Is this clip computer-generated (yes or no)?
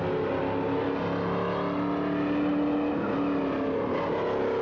no